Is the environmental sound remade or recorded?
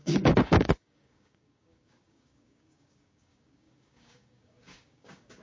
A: remade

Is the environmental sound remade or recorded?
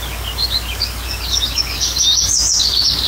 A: remade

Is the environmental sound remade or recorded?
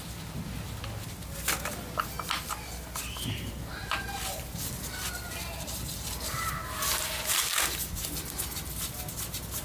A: recorded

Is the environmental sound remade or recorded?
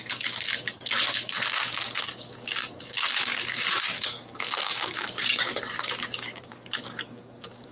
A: remade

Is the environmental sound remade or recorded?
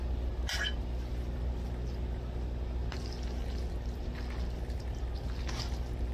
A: recorded